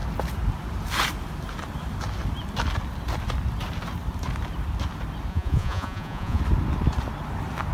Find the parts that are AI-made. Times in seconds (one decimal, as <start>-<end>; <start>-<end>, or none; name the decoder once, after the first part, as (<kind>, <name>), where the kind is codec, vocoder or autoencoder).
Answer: 5.3-6.4 (vocoder, Vocos)